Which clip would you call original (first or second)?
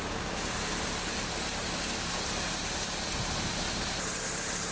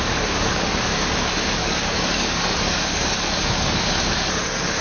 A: first